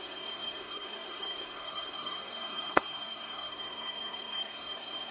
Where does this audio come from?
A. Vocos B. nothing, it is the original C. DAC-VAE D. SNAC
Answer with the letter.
D